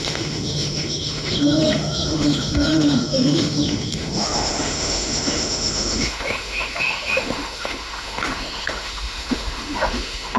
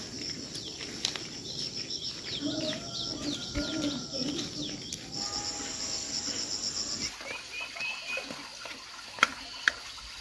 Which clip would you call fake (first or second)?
first